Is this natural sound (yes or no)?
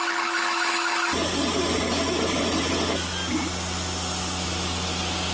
yes